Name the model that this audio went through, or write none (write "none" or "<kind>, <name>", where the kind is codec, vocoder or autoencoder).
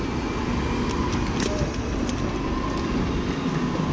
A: none